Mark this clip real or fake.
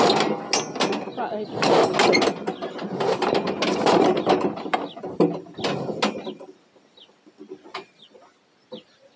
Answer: real